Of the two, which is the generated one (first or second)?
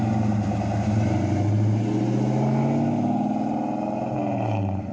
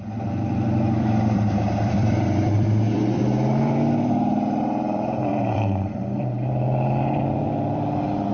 second